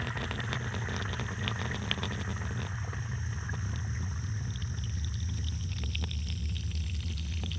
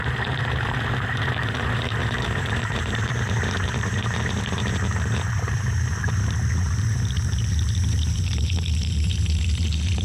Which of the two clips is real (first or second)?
first